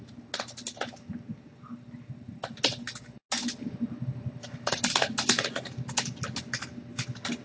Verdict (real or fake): real